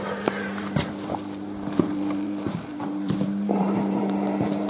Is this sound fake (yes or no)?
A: yes